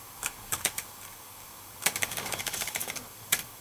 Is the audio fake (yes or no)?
yes